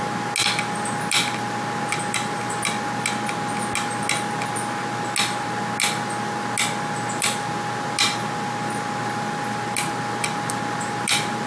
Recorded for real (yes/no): yes